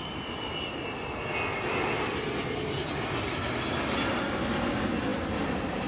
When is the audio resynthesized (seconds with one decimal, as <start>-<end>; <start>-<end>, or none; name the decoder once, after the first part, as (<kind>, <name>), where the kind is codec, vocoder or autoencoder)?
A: 5.1-5.9 (vocoder, BigVGAN v2)